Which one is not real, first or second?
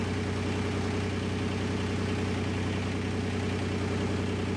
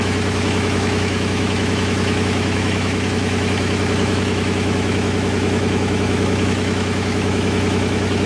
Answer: second